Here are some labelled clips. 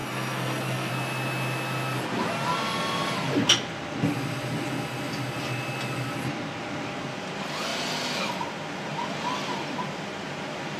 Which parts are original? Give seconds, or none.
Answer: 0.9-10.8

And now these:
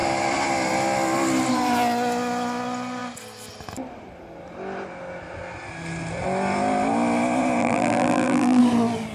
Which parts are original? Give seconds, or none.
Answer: 0.0-7.6; 8.6-9.1

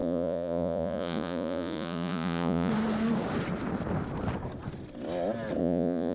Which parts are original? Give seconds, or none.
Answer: 2.7-5.6

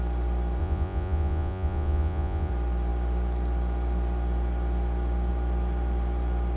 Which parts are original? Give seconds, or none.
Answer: 0.0-0.6; 2.5-6.6